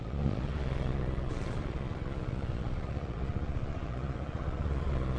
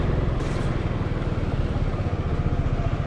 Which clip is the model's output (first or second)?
first